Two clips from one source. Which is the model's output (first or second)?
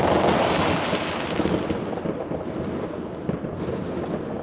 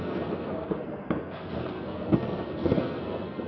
second